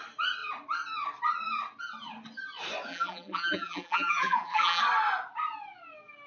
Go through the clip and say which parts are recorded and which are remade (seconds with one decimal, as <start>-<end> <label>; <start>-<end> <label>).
0.0-2.9 recorded; 2.9-4.8 remade; 4.8-6.3 recorded